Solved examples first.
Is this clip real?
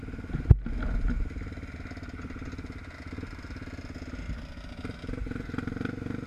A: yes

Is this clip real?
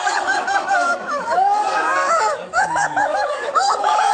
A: no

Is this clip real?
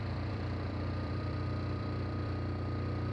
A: no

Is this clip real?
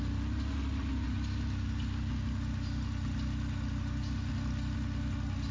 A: yes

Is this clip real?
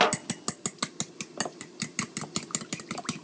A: yes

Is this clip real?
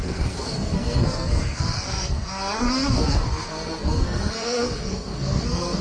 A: no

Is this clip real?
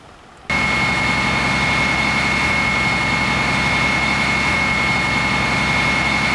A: yes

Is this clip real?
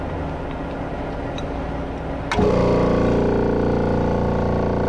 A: yes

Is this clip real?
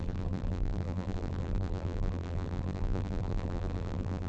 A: no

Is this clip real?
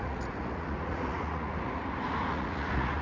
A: no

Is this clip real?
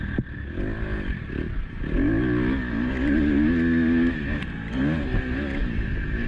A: yes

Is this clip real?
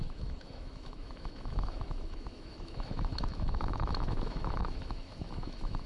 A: no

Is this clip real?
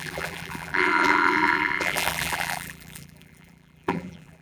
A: no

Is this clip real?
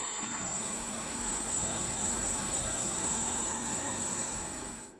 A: no